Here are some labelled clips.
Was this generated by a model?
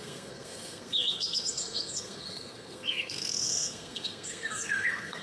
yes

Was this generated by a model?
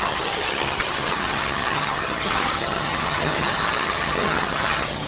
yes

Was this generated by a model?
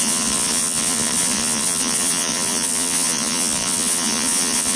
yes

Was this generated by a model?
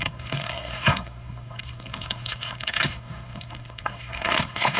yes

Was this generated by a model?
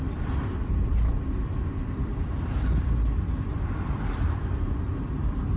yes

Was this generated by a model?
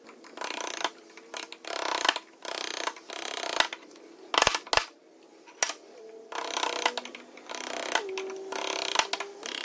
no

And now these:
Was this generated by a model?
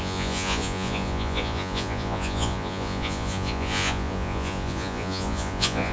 yes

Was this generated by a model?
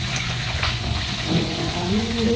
yes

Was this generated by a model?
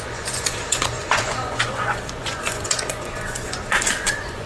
yes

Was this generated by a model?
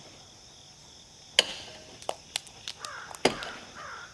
no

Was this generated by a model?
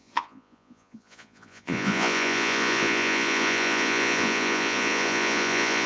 yes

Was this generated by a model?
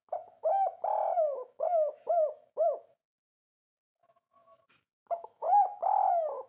yes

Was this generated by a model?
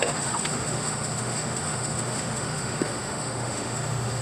yes